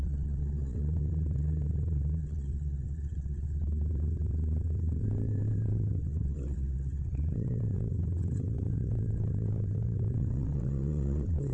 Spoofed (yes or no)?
yes